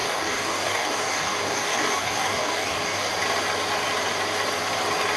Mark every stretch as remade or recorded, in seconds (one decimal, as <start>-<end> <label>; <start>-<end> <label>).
0.0-3.1 remade; 3.1-5.2 recorded